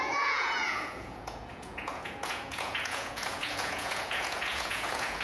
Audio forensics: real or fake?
fake